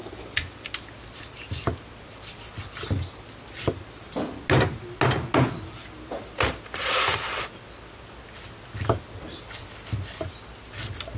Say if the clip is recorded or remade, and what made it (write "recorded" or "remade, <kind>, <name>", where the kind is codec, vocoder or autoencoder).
recorded